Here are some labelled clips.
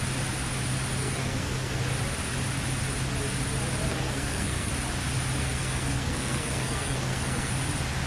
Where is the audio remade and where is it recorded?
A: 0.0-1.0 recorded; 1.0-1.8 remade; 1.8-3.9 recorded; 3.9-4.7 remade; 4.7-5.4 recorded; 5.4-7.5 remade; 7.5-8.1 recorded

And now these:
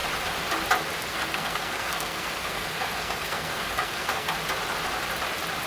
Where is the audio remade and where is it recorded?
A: 0.0-1.1 recorded; 1.1-4.3 remade; 4.3-5.7 recorded

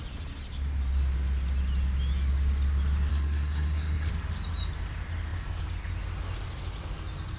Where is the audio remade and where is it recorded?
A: 0.0-3.1 recorded; 3.1-4.1 remade; 4.1-7.4 recorded

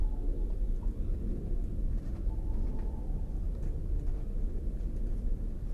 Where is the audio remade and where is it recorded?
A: 0.0-5.7 recorded